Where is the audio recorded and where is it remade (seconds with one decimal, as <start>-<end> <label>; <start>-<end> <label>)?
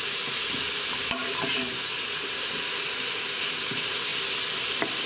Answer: 0.0-1.2 recorded; 1.2-2.6 remade; 2.6-5.1 recorded